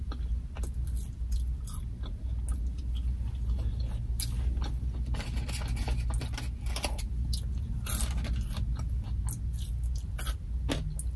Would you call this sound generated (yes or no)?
no